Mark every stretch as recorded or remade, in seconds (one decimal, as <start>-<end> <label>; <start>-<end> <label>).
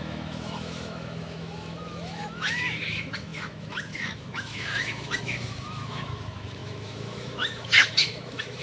0.0-8.6 remade